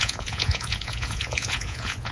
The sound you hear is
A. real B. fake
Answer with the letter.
B